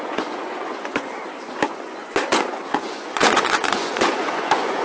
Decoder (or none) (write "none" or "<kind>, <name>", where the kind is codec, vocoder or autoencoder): vocoder, Vocos